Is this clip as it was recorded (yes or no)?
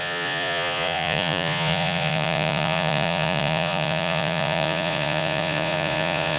no